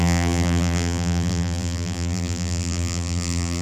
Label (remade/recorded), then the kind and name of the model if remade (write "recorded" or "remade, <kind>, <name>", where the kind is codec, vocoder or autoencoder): remade, vocoder, BigVGAN v2